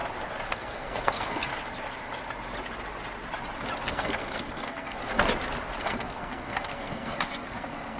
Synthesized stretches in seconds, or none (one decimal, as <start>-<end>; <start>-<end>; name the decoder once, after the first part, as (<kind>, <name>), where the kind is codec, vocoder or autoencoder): 0.5-1.5 (codec, SNAC); 3.9-5.0; 5.8-8.0